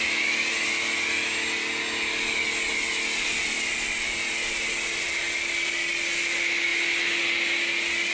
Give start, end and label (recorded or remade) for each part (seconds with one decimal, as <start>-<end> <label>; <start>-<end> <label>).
0.0-8.1 recorded